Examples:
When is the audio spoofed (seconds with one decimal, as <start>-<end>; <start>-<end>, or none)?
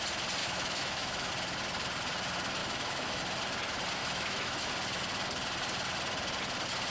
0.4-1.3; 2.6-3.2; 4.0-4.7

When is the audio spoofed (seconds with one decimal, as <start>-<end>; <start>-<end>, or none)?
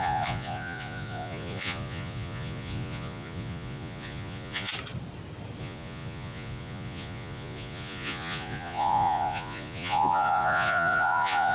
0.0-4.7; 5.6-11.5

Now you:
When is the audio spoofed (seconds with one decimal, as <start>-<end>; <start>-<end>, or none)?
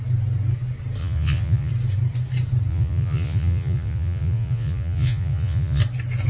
1.0-1.7; 2.7-5.8